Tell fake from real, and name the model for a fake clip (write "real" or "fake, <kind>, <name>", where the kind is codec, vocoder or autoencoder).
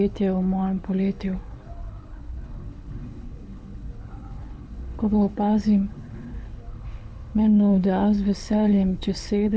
fake, codec, HILCodec